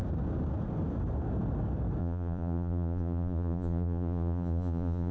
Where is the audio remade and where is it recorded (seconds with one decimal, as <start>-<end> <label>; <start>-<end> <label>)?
0.0-2.0 recorded; 2.0-5.1 remade